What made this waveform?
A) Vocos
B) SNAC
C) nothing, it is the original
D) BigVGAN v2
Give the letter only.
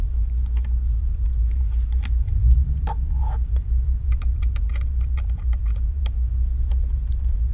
D